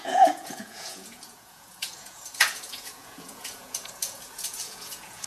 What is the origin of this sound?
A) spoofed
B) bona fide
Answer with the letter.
A